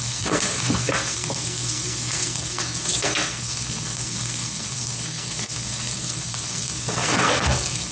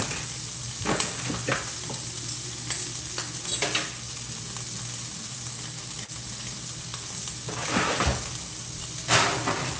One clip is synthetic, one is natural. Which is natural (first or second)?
second